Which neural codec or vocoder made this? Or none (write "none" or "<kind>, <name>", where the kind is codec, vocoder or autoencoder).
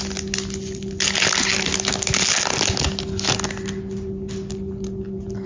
none